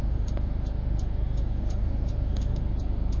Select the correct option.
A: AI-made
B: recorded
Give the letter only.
A